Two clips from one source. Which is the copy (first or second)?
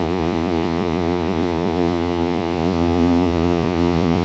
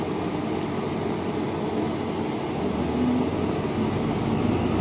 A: first